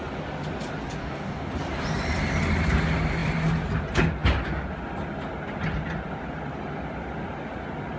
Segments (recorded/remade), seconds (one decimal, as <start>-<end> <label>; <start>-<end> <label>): 0.0-1.0 recorded; 1.0-1.5 remade; 1.5-8.0 recorded